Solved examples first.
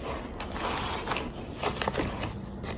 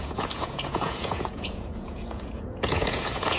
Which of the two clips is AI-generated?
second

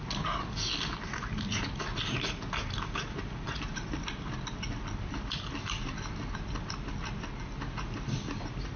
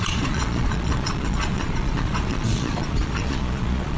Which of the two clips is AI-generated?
second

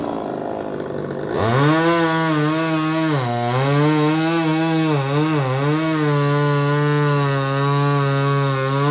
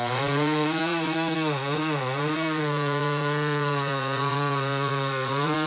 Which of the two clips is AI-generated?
second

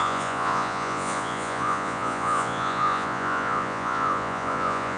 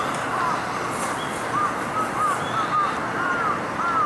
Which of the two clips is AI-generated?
first